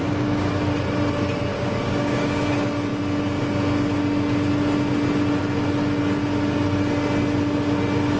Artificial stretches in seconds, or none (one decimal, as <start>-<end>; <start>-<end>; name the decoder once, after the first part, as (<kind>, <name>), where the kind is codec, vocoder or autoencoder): 0.0-0.5 (codec, DAC); 1.5-2.5